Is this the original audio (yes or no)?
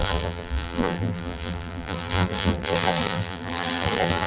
no